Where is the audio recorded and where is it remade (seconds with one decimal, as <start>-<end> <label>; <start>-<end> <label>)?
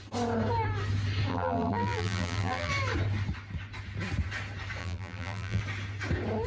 0.0-1.3 recorded; 1.3-2.7 remade; 2.7-4.8 recorded; 4.8-5.6 remade; 5.6-6.5 recorded